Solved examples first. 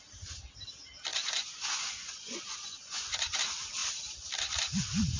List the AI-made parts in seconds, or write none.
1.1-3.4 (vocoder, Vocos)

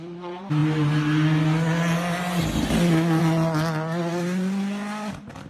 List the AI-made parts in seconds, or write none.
none

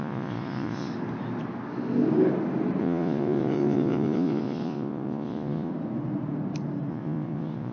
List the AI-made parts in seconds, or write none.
0.0-0.9 (vocoder, Vocos); 2.8-5.7; 6.9-7.7

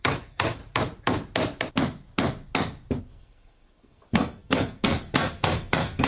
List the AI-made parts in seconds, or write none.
0.0-0.6 (codec, SNAC); 3.0-6.1

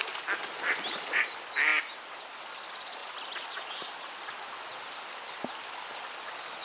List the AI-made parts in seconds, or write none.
none

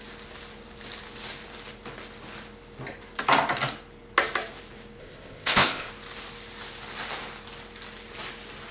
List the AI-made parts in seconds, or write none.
5.0-5.9 (codec, ZipCodec)

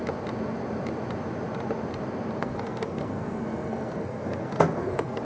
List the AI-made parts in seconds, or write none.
2.4-5.2 (codec, SNAC)